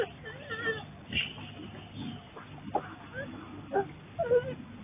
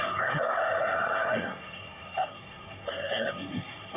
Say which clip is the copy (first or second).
second